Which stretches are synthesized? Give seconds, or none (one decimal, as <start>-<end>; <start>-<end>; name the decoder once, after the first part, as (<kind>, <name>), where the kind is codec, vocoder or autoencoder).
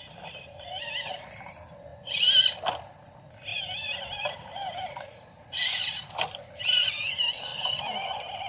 3.5-7.1 (vocoder, BigVGAN v2); 7.5-8.5